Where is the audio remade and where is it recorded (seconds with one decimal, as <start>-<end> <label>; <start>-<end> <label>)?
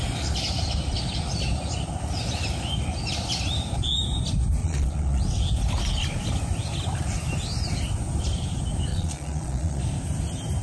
0.0-4.6 recorded; 4.6-5.2 remade; 5.2-8.9 recorded; 8.9-9.8 remade; 9.8-10.6 recorded